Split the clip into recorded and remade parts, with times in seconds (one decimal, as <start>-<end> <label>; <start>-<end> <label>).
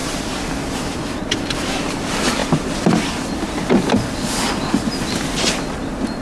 0.0-6.2 recorded